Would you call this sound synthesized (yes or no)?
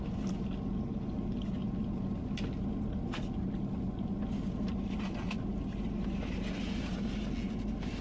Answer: no